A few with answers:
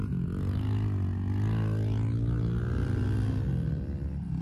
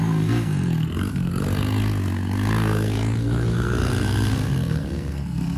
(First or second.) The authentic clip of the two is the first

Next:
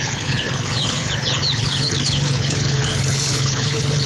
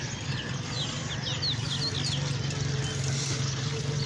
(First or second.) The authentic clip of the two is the second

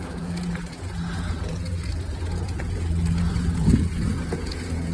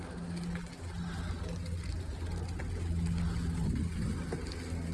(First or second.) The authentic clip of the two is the second